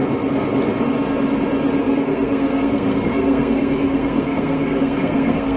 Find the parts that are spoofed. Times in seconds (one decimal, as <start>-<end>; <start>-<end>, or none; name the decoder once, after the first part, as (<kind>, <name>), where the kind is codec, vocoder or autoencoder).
1.8-5.6 (codec, SNAC)